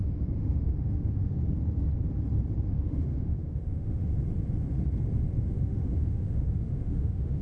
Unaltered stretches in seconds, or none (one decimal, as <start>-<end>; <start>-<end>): 1.4-2.7; 4.1-5.5